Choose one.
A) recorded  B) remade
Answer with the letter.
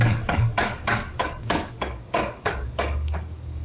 B